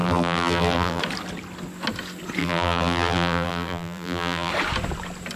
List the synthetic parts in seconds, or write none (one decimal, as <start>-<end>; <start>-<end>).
0.0-1.0; 2.4-4.5